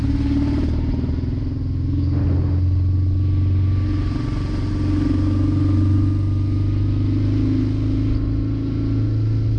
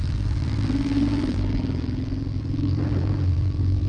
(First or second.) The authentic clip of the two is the first